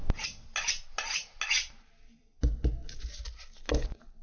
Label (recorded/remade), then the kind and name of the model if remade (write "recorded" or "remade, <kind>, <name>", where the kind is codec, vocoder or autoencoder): recorded